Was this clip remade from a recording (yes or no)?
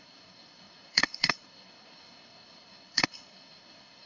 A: yes